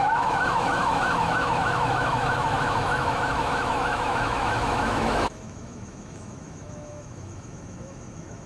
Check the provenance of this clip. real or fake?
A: fake